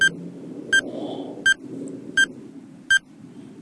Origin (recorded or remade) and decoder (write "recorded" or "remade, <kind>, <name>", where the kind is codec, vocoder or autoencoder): recorded